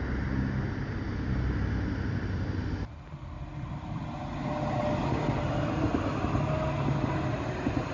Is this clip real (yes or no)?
yes